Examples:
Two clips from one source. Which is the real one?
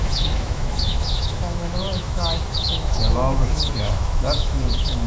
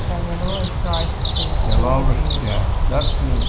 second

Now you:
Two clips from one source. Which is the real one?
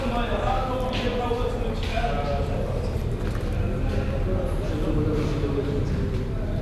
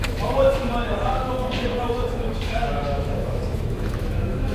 first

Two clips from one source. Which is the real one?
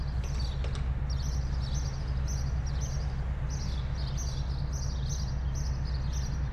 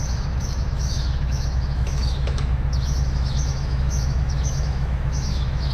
first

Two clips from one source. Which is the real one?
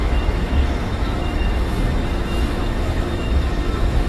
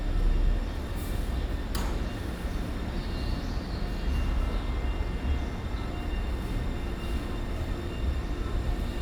second